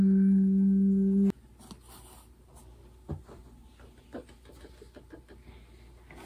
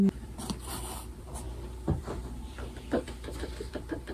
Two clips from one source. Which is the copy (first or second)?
second